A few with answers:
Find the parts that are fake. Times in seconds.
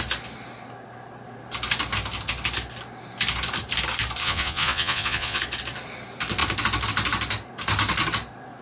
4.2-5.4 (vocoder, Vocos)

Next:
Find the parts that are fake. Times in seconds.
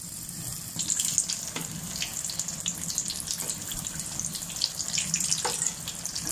none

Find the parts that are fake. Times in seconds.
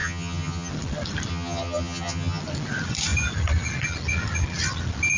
0.0-0.7 (vocoder, HiFi-GAN); 1.3-2.4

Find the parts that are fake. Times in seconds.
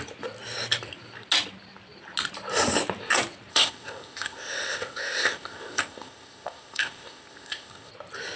3.5-7.9 (codec, ZipCodec)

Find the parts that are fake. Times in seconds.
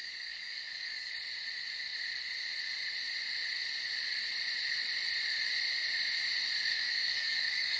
0.0-1.1 (codec, DAC); 6.7-7.8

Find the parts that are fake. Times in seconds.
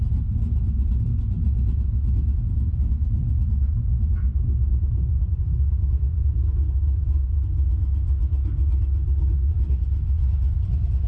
2.7-6.2 (vocoder, BigVGAN v2)